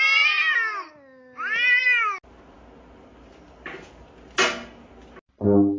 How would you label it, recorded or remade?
recorded